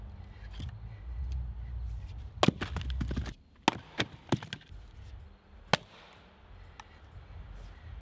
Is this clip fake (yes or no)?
no